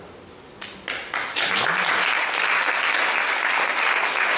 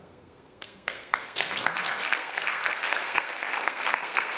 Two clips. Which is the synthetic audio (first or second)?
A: second